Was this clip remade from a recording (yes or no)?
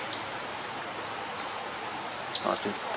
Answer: no